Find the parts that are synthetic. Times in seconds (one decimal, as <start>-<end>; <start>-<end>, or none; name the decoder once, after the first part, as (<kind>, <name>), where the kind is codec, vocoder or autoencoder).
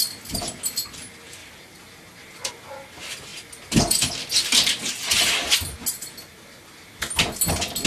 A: 1.4-2.5 (vocoder, BigVGAN v2)